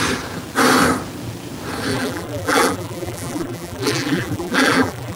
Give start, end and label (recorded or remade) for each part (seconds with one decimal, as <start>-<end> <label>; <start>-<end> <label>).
0.0-1.9 recorded; 1.9-5.2 remade